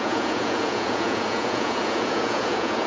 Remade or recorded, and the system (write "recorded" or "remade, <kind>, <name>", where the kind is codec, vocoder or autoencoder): remade, vocoder, Vocos